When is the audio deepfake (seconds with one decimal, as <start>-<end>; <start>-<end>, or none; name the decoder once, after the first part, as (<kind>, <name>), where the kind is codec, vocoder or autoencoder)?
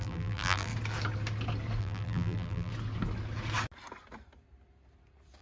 0.0-0.7 (vocoder, BigVGAN v2); 1.8-2.7